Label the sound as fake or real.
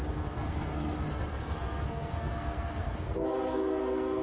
fake